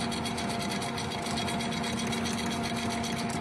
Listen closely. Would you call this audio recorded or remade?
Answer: recorded